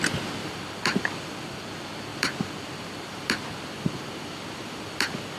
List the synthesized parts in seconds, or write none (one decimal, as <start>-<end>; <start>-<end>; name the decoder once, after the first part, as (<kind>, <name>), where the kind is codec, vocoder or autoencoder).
0.4-1.6 (vocoder, BigVGAN v2); 2.1-5.4